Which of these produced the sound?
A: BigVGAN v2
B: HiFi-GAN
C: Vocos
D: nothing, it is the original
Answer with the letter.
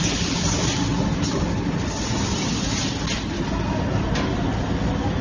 D